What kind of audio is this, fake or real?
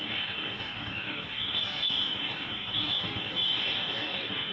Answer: fake